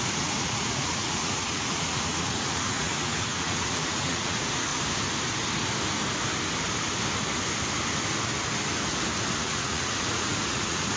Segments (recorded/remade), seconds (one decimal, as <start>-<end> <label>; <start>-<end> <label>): 0.0-4.7 remade; 4.7-9.4 recorded; 9.4-11.0 remade